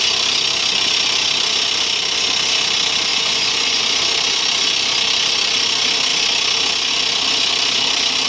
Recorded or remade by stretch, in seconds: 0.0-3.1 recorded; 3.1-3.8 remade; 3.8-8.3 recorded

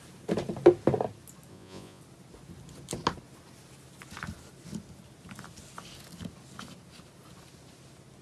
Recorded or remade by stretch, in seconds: 0.0-1.5 recorded; 1.5-2.0 remade; 2.0-8.2 recorded

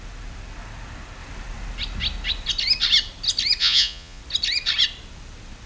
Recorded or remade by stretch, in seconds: 0.0-3.6 recorded; 3.6-4.2 remade; 4.2-5.7 recorded

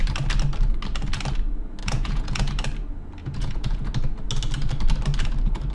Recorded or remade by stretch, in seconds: 0.0-1.8 recorded; 1.8-2.5 remade; 2.5-3.2 recorded; 3.2-3.9 remade; 3.9-5.7 recorded

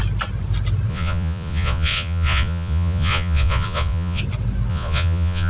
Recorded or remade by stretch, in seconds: 0.0-0.9 recorded; 0.9-4.2 remade; 4.2-4.7 recorded; 4.7-5.5 remade